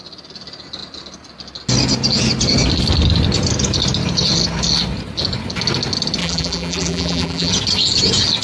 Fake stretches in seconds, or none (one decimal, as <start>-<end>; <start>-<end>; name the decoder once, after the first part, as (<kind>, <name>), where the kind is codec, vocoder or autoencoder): 6.2-7.5 (vocoder, BigVGAN v2)